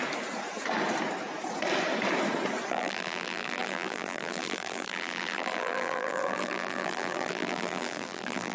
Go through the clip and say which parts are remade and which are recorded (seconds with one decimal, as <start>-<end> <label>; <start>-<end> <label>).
0.0-2.7 recorded; 2.7-8.5 remade